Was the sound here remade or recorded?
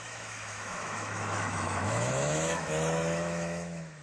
remade